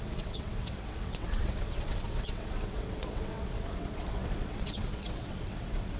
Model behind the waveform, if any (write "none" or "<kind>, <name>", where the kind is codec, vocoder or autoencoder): vocoder, WaveNeXt